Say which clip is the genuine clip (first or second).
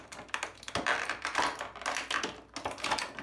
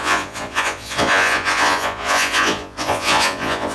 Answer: first